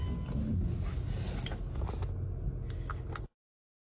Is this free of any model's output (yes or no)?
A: yes